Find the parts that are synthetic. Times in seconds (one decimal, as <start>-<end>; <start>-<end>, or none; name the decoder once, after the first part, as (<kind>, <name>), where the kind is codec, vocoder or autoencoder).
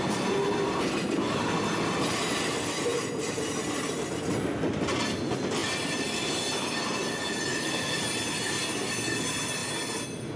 7.5-8.0 (autoencoder, DAC-VAE)